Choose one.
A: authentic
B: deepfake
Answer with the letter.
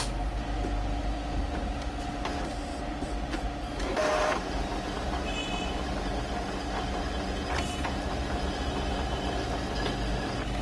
A